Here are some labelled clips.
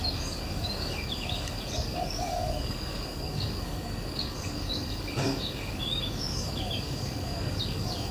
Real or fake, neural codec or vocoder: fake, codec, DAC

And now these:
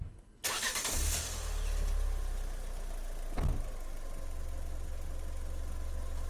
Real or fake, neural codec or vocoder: real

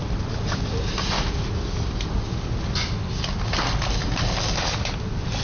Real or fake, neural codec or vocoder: real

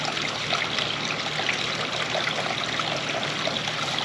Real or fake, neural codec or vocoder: real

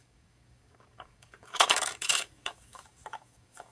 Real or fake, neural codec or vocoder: fake, codec, DAC